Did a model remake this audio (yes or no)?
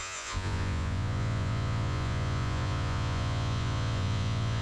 yes